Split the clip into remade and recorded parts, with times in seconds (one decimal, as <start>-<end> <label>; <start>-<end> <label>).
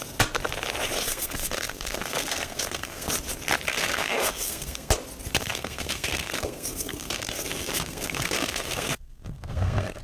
0.0-1.1 recorded; 1.1-3.1 remade; 3.1-3.7 recorded; 3.7-4.9 remade; 4.9-5.4 recorded; 5.4-10.0 remade